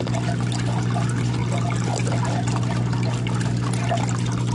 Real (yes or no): yes